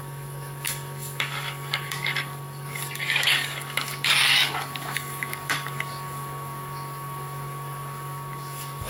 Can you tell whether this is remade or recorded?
remade